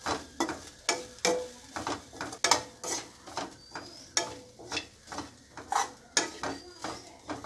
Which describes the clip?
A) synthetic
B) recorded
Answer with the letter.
B